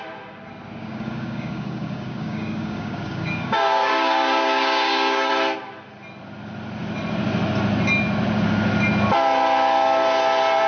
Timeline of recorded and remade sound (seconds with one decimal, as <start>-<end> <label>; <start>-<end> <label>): 0.0-0.8 recorded; 0.8-5.3 remade; 5.3-10.7 recorded